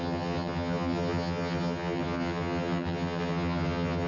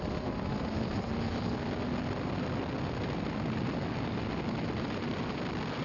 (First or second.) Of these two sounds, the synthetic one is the first